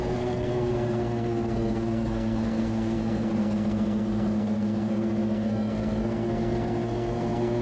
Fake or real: fake